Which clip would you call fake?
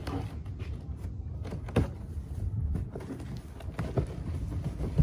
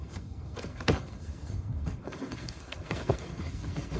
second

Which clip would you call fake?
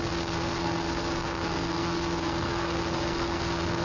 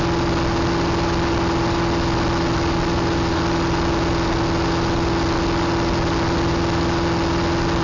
first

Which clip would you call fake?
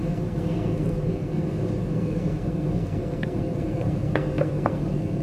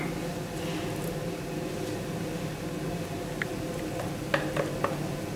first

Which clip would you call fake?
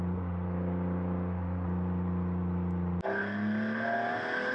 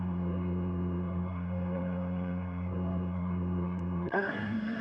second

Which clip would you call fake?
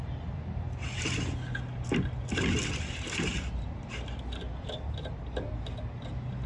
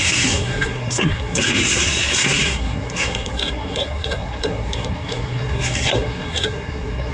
second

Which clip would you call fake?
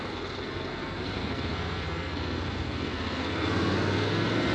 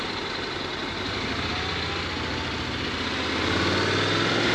first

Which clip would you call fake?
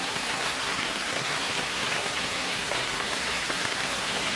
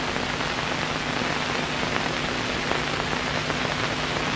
first